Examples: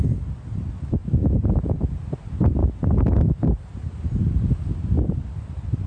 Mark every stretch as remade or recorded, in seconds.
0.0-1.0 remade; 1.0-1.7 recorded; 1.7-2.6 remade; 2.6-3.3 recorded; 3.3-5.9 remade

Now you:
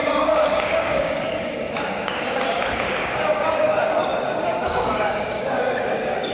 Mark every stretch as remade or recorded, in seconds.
0.0-6.3 remade

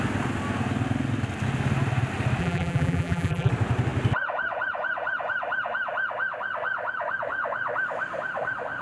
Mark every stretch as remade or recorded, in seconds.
0.0-2.4 recorded; 2.4-3.5 remade; 3.5-8.8 recorded

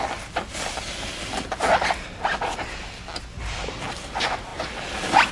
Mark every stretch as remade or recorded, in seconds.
0.0-5.3 recorded